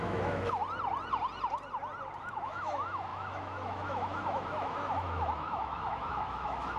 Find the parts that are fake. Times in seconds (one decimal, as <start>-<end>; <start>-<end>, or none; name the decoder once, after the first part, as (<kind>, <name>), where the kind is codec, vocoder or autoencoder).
0.0-0.6 (autoencoder, DAC-VAE); 2.2-6.8